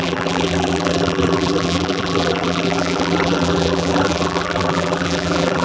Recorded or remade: remade